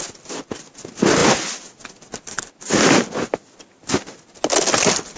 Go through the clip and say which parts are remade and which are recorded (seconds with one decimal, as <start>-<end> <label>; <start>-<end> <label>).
0.0-5.2 recorded